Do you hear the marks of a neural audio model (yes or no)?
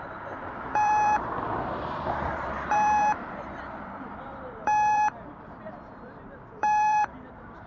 yes